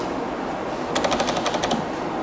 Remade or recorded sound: recorded